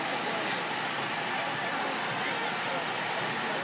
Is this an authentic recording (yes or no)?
yes